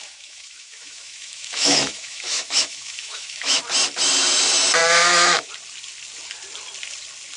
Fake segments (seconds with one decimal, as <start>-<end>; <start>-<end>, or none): 0.0-3.6; 4.8-5.5